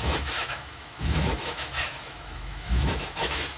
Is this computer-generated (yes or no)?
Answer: yes